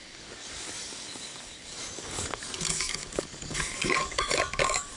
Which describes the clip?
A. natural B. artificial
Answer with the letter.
B